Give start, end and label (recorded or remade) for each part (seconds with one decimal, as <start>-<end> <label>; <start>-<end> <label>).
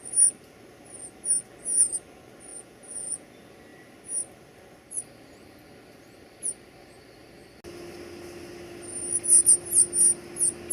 0.0-2.5 recorded; 2.5-3.3 remade; 3.3-10.7 recorded